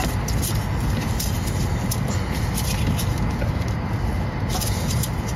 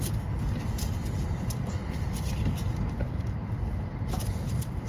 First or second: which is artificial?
second